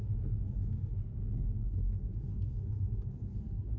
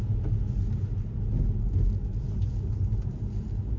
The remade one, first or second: first